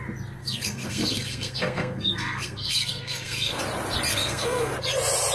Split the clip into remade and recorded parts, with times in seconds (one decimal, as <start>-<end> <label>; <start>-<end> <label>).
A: 0.0-0.4 recorded; 0.4-3.6 remade; 3.6-4.1 recorded; 4.1-4.7 remade; 4.7-5.3 recorded